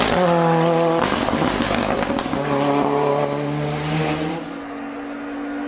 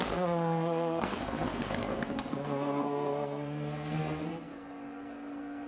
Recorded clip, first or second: first